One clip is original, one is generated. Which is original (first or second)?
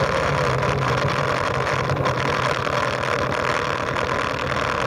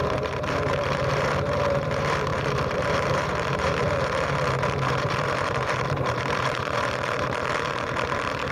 first